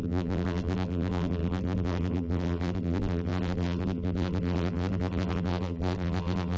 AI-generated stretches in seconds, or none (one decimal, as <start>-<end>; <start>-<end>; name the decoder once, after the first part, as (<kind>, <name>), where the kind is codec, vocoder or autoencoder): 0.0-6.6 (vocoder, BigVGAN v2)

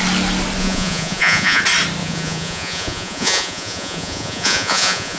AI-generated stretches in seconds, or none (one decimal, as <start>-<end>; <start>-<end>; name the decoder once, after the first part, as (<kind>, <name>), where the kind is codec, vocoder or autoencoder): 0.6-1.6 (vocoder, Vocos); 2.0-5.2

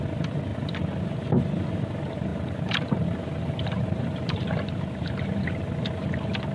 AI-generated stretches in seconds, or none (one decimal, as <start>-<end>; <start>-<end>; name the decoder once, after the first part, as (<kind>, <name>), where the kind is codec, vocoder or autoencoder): 2.3-5.5 (vocoder, BigVGAN v2)

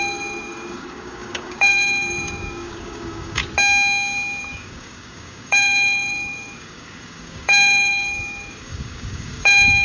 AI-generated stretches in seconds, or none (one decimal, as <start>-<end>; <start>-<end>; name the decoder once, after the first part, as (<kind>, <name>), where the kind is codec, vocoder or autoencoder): 0.0-3.4 (codec, DAC); 4.4-9.8

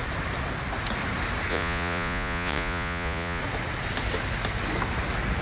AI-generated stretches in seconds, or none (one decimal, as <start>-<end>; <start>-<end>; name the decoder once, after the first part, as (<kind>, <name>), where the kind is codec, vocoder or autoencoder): 1.5-3.4 (vocoder, Vocos)

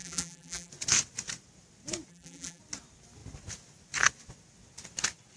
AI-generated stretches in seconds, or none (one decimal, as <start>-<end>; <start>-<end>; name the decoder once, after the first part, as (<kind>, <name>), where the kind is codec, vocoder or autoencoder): 0.0-0.7 (vocoder, BigVGAN v2); 2.1-2.6

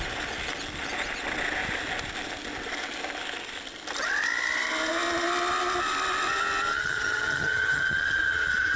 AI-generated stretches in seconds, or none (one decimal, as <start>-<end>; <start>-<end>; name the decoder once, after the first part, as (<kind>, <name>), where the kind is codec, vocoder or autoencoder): 6.7-8.8 (vocoder, HiFi-GAN)